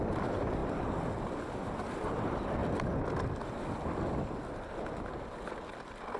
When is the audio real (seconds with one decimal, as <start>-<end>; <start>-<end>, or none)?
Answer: 0.0-6.2